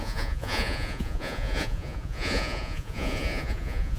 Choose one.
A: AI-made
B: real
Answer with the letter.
A